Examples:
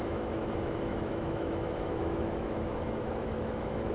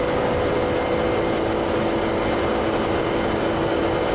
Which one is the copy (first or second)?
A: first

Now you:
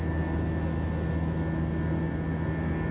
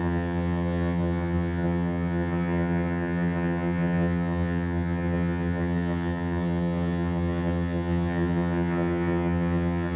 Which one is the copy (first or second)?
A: second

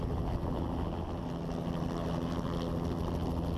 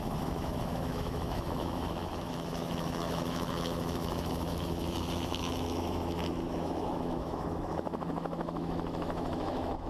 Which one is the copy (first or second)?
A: second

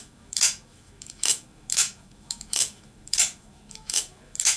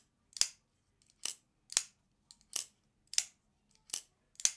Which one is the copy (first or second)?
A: first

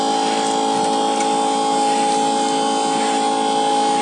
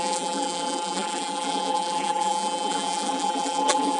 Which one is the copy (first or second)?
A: second